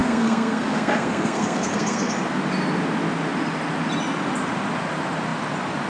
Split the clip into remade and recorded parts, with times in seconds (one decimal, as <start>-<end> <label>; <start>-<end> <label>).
0.0-2.1 remade; 2.1-5.9 recorded